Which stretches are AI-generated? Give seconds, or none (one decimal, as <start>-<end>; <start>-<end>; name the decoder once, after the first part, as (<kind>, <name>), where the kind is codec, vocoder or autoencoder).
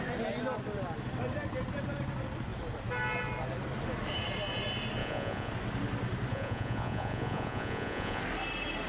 5.0-5.5 (vocoder, Vocos); 6.3-8.2